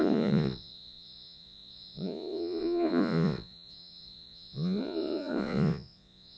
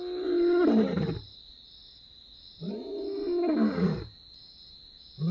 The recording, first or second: second